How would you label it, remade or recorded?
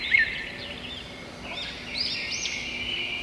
recorded